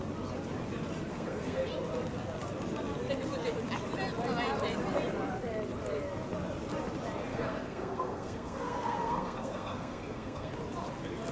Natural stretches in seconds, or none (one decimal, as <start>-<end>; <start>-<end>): 0.0-1.1; 1.7-7.3; 10.5-11.3